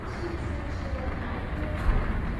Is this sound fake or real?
real